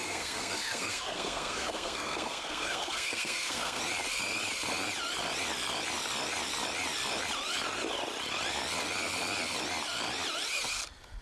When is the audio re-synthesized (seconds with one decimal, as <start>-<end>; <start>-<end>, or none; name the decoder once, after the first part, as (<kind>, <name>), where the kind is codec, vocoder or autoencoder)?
0.0-3.8 (codec, SNAC)